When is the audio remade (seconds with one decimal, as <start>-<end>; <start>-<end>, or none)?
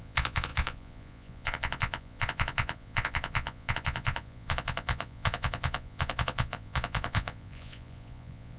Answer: 0.0-8.6